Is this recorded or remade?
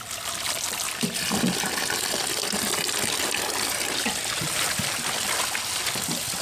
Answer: recorded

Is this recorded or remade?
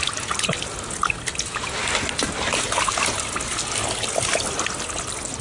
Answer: recorded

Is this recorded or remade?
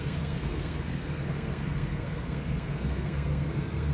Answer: remade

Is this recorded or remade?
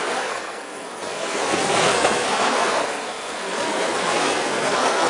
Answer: remade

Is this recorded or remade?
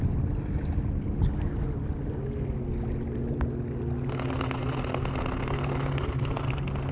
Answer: recorded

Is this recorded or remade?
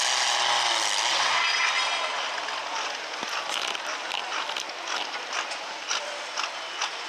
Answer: recorded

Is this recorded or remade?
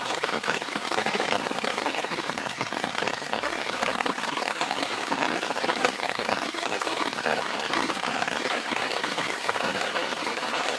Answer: remade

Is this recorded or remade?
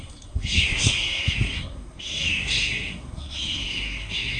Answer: remade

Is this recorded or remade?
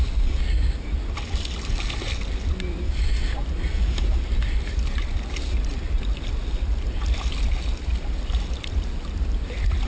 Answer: recorded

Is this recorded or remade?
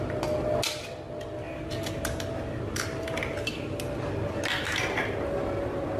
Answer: recorded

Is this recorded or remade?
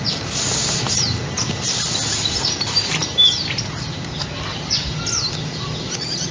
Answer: recorded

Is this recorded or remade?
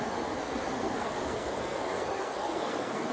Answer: remade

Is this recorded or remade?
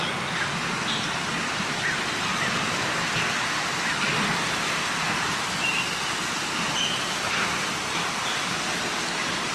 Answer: recorded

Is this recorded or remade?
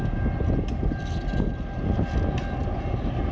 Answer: recorded